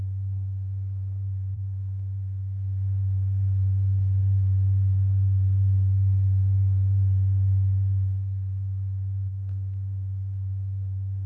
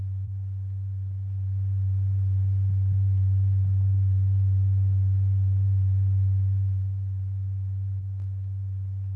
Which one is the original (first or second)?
second